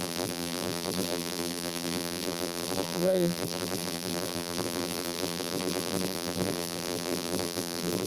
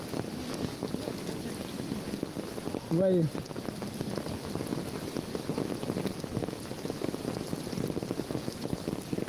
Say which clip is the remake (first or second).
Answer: first